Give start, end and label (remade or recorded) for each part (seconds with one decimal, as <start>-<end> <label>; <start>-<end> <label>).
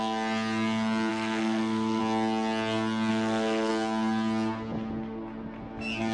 0.0-1.1 recorded; 1.1-2.0 remade; 2.0-3.1 recorded; 3.1-3.7 remade; 3.7-6.1 recorded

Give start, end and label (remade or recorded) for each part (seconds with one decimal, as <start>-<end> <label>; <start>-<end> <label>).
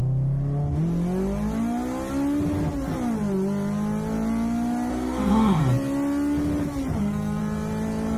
0.0-4.9 recorded; 4.9-5.6 remade; 5.6-7.0 recorded; 7.0-7.4 remade; 7.4-8.2 recorded